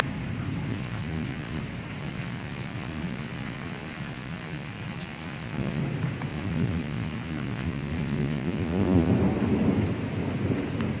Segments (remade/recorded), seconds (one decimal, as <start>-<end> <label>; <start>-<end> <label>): 0.0-0.7 recorded; 0.7-1.6 remade; 1.6-2.0 recorded; 2.0-5.8 remade; 5.8-6.3 recorded; 6.3-9.1 remade; 9.1-11.0 recorded